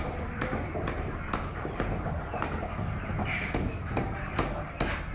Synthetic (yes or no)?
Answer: no